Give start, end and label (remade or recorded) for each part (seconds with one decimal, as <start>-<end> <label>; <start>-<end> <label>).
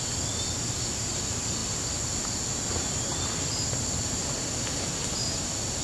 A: 0.0-5.8 recorded